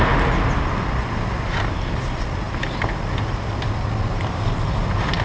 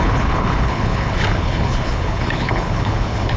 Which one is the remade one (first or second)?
second